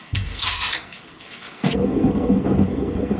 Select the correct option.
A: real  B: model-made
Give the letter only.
B